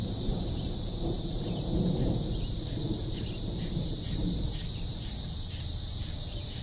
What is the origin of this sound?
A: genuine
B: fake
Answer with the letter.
B